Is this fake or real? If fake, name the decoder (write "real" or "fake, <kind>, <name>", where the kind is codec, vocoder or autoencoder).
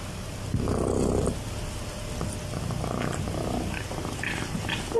real